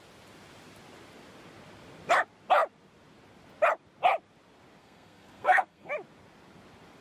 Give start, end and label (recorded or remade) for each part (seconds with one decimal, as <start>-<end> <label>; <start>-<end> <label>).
0.0-4.8 recorded; 4.8-5.9 remade; 5.9-7.0 recorded